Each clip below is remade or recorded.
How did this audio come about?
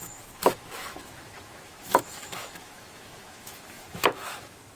remade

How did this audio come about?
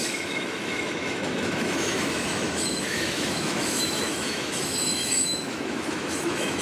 remade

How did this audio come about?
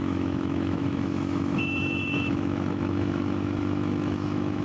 remade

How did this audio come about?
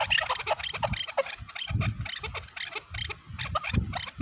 recorded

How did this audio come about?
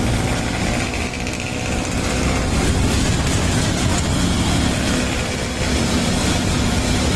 recorded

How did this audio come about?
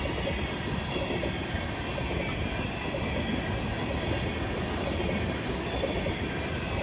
recorded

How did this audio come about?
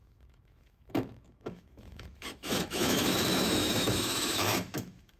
remade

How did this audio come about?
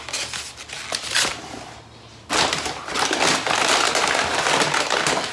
recorded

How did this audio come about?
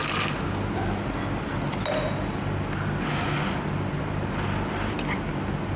recorded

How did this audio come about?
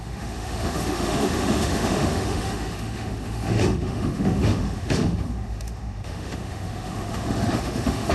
remade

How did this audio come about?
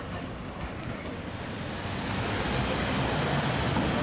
recorded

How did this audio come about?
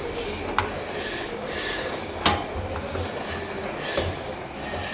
recorded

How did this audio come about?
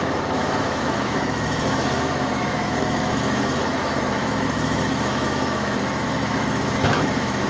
remade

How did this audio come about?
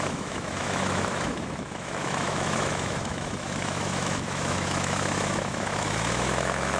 remade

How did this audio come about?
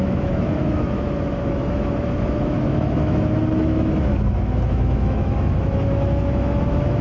remade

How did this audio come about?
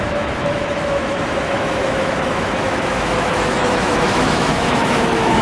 remade